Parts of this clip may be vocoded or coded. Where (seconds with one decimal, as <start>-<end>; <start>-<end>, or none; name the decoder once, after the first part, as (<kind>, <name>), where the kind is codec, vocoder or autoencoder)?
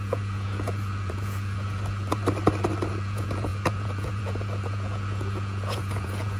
0.0-2.2 (vocoder, Vocos); 2.9-6.4